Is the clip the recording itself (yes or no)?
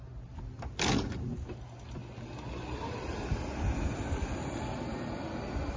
yes